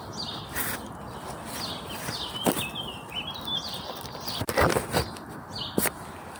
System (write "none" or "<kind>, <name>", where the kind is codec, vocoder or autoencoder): none